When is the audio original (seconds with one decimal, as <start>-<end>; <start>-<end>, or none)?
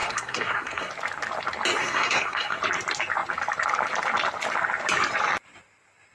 0.9-1.8; 2.6-6.1